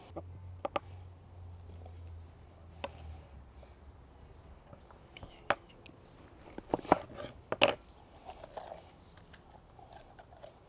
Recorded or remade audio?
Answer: recorded